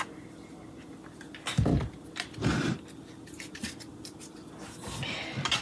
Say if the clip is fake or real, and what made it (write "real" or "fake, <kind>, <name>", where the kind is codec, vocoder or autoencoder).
real